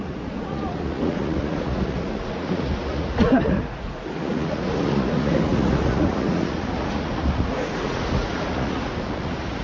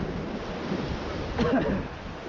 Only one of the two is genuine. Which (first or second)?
second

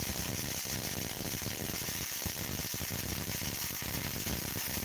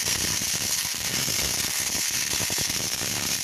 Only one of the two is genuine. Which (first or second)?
first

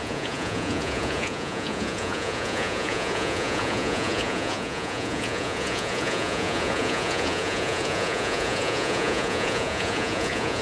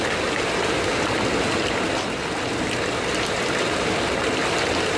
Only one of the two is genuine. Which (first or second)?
second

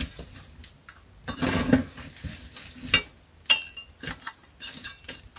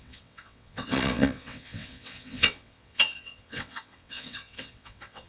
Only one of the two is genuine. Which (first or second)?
first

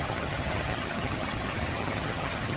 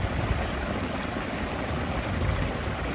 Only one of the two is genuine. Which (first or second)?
second